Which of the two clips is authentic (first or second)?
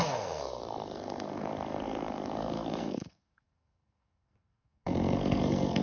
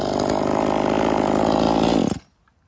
second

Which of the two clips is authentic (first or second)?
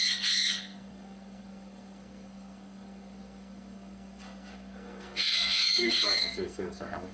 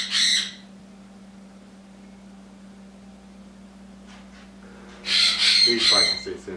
second